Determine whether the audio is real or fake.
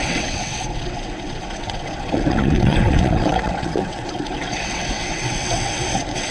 fake